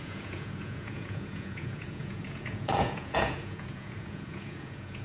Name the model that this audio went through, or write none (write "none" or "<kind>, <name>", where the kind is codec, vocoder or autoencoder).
vocoder, Vocos